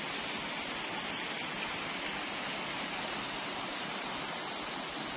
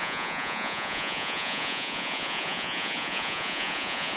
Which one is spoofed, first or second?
second